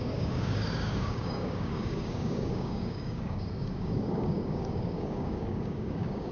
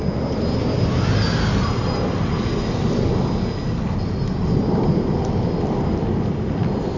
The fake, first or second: first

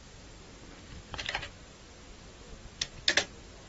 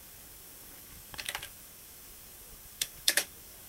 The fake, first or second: second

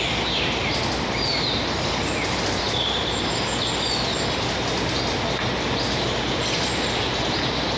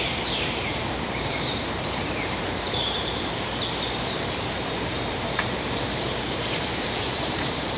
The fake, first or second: second